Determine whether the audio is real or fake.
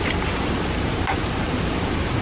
fake